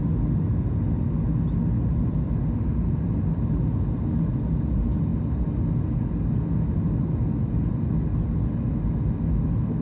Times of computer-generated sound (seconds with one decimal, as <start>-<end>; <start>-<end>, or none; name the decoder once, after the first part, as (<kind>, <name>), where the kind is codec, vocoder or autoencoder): none